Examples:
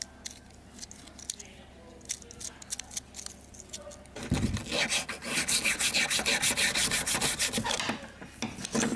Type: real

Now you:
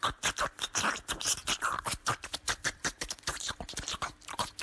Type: real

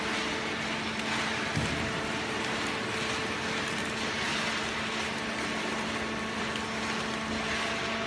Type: real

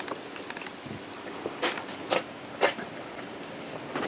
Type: real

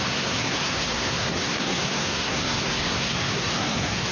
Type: fake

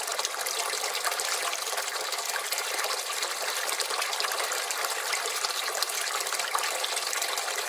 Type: real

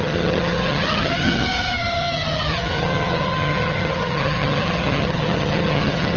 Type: fake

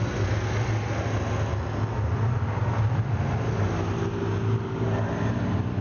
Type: real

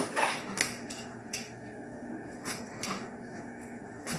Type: fake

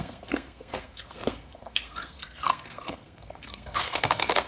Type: fake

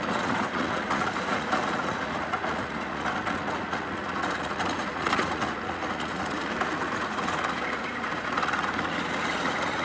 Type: fake